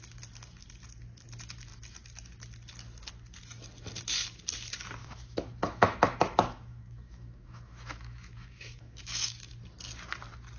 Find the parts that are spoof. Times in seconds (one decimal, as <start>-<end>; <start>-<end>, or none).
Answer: 5.0-9.5